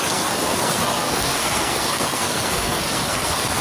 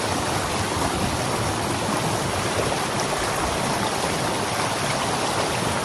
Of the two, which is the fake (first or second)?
first